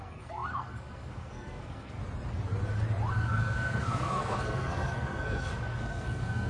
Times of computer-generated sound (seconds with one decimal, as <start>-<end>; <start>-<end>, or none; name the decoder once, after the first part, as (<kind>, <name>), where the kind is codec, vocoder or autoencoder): 0.0-2.0 (codec, SNAC); 3.1-6.5